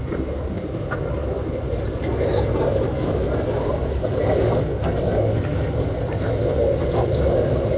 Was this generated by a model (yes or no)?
no